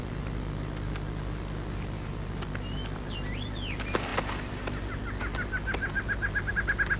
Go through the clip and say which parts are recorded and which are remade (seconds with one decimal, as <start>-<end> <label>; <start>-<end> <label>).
0.0-7.0 recorded